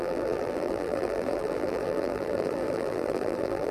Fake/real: fake